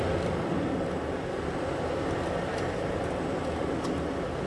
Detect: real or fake real